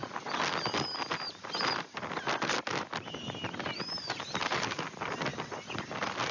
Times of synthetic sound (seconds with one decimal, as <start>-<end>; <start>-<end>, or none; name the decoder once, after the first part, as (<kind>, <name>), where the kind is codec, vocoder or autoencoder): none